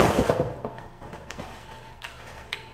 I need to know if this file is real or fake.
fake